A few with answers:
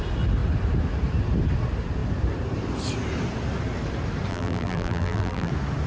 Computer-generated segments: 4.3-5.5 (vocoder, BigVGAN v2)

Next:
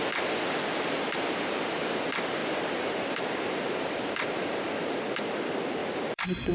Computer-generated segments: 2.4-5.2 (vocoder, BigVGAN v2); 5.8-6.5

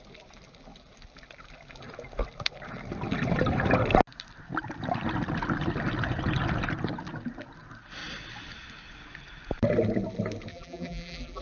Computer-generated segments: 10.5-11.4 (vocoder, BigVGAN v2)

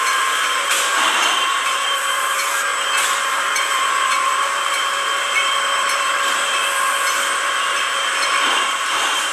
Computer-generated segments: 0.0-2.7 (vocoder, BigVGAN v2); 3.3-6.6; 7.4-9.3